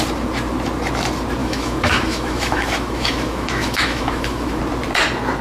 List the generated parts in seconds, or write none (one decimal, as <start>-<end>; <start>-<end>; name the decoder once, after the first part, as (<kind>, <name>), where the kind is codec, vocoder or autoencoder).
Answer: 1.4-4.6 (autoencoder, DAC-VAE)